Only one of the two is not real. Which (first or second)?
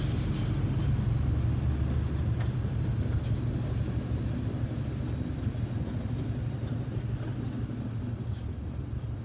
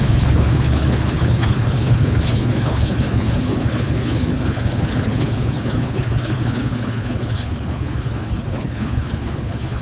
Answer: second